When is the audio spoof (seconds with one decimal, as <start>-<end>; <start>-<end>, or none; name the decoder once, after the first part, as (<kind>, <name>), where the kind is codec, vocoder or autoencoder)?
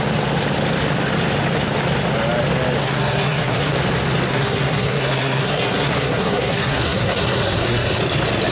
2.8-3.7 (codec, SNAC); 4.3-8.0